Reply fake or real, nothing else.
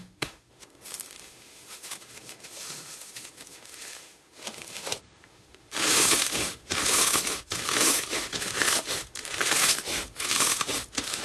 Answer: fake